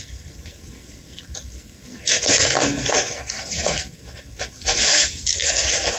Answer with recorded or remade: remade